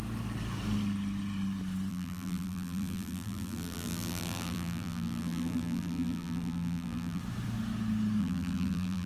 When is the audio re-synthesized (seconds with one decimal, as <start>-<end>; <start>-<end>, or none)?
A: 1.9-7.2; 8.2-9.1